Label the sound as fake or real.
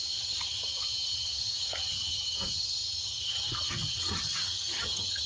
fake